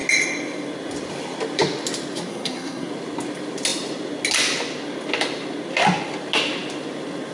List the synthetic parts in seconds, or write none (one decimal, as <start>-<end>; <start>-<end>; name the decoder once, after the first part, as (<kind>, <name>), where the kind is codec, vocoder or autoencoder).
2.3-2.9 (codec, SNAC)